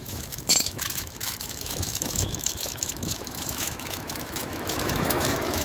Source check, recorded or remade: remade